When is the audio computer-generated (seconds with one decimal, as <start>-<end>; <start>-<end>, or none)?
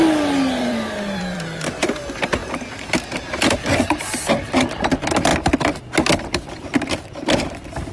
0.6-2.4; 2.9-5.3; 6.2-7.9